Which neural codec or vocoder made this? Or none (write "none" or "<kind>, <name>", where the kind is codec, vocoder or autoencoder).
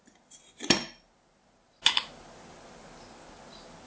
none